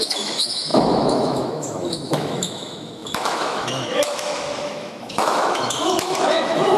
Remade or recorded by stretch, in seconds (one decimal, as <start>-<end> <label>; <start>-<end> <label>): 0.0-6.8 remade